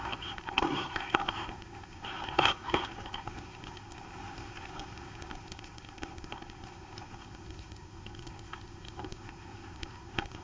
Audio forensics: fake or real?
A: fake